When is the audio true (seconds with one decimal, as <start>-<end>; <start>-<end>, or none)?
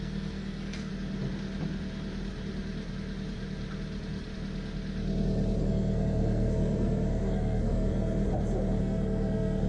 0.9-5.6; 8.2-8.8